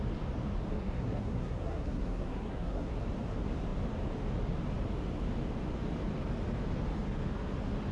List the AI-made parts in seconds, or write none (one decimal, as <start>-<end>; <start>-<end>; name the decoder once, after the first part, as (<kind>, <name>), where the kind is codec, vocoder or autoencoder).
0.7-3.0 (codec, SNAC)